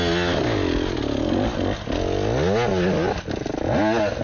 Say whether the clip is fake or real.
real